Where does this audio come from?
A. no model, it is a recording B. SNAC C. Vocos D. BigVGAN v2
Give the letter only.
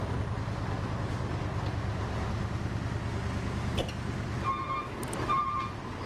A